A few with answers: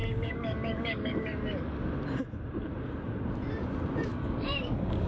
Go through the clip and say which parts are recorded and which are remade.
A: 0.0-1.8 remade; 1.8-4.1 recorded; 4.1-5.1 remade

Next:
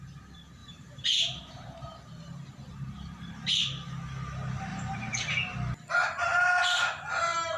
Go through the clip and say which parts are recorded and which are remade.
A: 0.0-0.6 recorded; 0.6-3.6 remade; 3.6-4.7 recorded; 4.7-5.3 remade; 5.3-6.0 recorded; 6.0-6.8 remade; 6.8-7.6 recorded